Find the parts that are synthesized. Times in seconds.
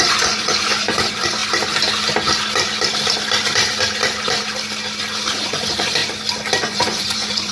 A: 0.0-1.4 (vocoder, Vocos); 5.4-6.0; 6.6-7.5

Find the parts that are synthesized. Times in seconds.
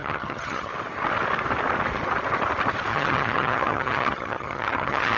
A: 0.0-0.7 (vocoder, HiFi-GAN); 2.9-5.2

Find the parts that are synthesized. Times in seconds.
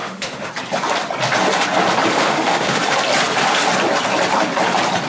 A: 0.0-0.5 (autoencoder, DAC-VAE); 2.1-2.8